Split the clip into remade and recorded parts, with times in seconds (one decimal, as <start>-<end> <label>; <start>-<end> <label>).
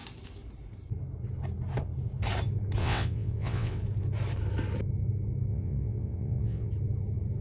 0.0-2.8 recorded; 2.8-3.8 remade; 3.8-5.5 recorded; 5.5-6.7 remade; 6.7-7.4 recorded